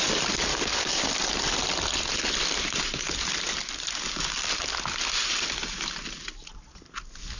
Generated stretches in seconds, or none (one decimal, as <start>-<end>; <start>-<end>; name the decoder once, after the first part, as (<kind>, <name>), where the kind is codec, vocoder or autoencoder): 0.5-1.0 (codec, DAC)